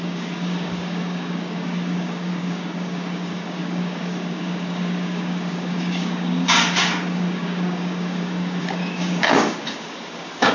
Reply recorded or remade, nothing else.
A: remade